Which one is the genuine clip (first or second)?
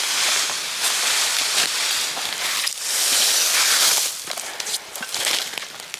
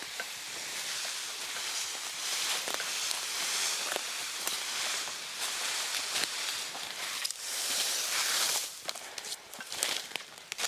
first